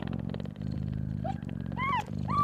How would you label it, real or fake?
real